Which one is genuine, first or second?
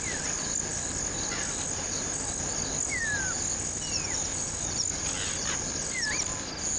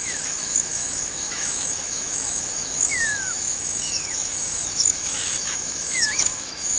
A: first